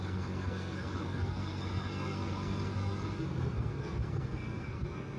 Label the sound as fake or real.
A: fake